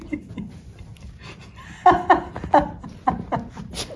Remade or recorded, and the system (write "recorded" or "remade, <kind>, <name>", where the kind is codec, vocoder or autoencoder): recorded